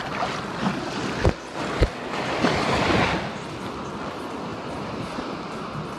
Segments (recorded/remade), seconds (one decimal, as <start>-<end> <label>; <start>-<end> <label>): 0.0-4.5 recorded; 4.5-5.1 remade; 5.1-6.0 recorded